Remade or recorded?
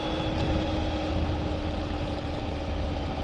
recorded